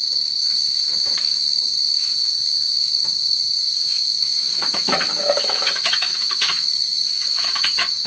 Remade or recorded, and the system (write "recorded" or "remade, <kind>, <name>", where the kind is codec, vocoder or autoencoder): remade, autoencoder, DAC-VAE